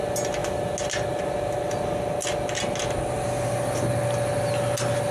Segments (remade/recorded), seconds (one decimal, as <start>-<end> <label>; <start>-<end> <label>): 0.0-5.1 recorded